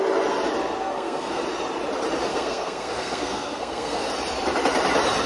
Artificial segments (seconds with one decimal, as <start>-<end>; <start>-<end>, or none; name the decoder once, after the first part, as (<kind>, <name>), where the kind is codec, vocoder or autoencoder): 0.8-1.4 (codec, SNAC); 2.3-4.1